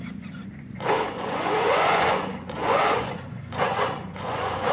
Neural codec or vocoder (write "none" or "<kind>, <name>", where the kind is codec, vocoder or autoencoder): vocoder, Vocos